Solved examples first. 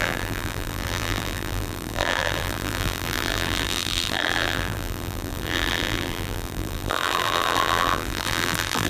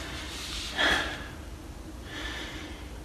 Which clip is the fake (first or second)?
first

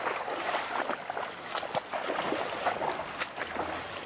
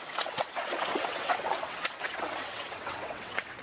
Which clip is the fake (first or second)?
second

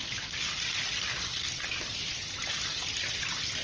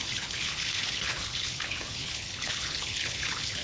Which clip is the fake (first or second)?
second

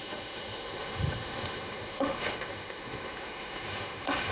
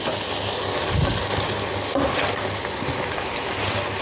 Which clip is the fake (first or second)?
first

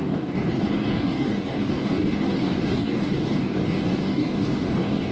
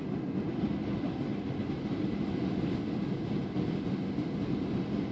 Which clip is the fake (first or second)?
first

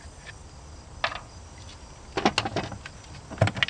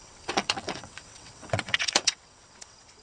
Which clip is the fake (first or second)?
second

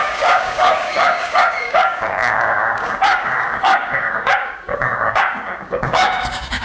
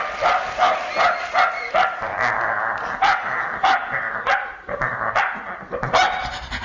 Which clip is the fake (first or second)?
first